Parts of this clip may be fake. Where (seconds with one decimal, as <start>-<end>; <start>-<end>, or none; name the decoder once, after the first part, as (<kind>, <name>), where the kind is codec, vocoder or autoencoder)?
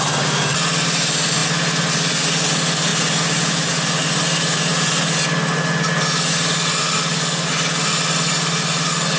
none